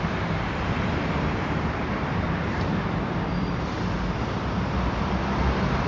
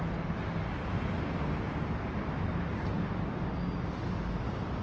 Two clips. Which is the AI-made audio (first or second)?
first